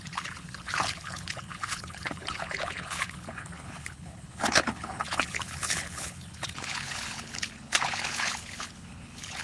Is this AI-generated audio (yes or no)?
yes